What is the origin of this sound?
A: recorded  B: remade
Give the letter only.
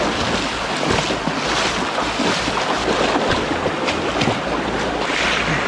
A